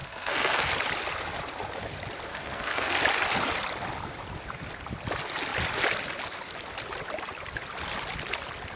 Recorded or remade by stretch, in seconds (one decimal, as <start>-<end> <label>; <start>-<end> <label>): 0.0-0.7 remade; 0.7-2.3 recorded; 2.3-3.0 remade; 3.0-8.8 recorded